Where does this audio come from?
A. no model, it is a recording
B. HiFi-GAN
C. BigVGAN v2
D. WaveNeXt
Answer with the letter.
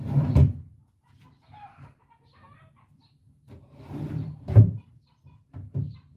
C